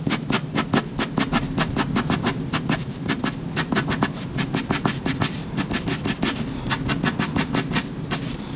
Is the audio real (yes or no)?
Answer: yes